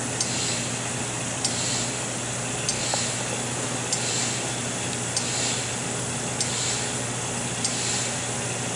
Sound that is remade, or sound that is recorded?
recorded